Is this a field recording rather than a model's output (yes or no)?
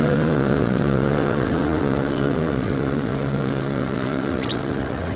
no